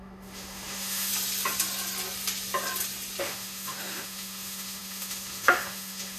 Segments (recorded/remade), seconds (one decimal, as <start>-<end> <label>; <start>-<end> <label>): 0.0-1.1 remade; 1.1-3.2 recorded; 3.2-6.2 remade

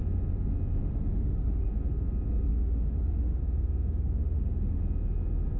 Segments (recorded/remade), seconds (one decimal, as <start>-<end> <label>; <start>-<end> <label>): 0.0-0.8 recorded; 0.8-1.7 remade; 1.7-2.5 recorded; 2.5-3.4 remade; 3.4-4.2 recorded; 4.2-4.8 remade; 4.8-5.6 recorded

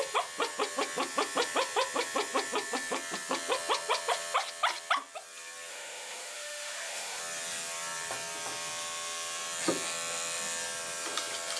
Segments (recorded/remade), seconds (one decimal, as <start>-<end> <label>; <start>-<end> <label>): 0.0-5.7 recorded; 5.7-7.2 remade; 7.2-11.6 recorded

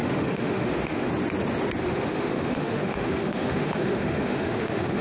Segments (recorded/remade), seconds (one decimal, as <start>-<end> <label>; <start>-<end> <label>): 0.0-1.1 remade; 1.1-1.8 recorded; 1.8-5.0 remade

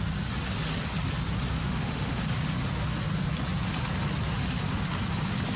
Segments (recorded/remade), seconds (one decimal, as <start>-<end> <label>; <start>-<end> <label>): 0.0-1.6 recorded; 1.6-2.2 remade; 2.2-5.6 recorded